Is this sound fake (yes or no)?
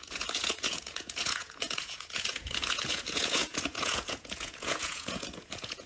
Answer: yes